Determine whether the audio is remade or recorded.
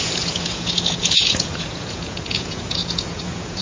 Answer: remade